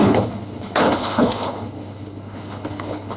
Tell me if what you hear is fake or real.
fake